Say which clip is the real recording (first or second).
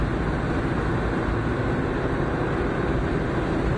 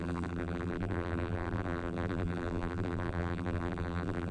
first